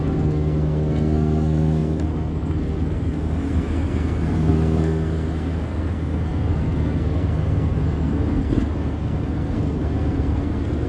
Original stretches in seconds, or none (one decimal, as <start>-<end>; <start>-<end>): none